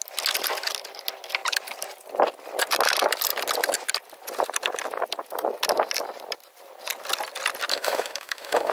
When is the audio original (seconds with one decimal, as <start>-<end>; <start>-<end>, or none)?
0.0-7.7